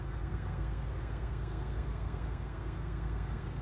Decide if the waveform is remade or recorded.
remade